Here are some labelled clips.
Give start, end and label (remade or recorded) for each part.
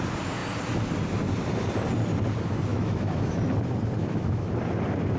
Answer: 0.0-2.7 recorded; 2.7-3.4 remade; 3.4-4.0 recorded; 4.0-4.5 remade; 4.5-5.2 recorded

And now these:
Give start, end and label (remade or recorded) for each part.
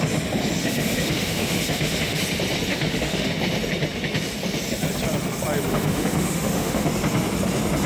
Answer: 0.0-0.6 recorded; 0.6-2.2 remade; 2.2-2.7 recorded; 2.7-3.3 remade; 3.3-5.7 recorded; 5.7-6.9 remade; 6.9-7.9 recorded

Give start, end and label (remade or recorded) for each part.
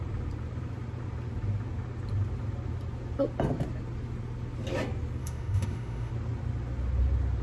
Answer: 0.0-5.2 recorded; 5.2-6.1 remade; 6.1-7.4 recorded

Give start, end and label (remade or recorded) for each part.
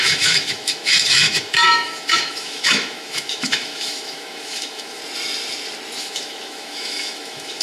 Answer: 0.0-5.0 remade; 5.0-6.0 recorded; 6.0-7.6 remade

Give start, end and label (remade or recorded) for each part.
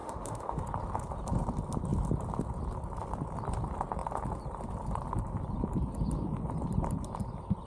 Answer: 0.0-0.6 remade; 0.6-7.7 recorded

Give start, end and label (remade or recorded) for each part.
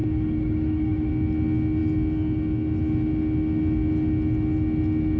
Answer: 0.0-1.1 remade; 1.1-5.2 recorded